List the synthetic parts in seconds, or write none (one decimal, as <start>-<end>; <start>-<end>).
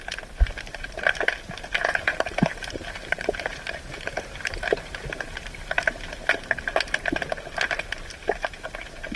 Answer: 1.9-6.3